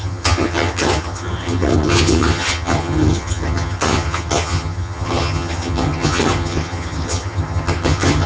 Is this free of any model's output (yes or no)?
no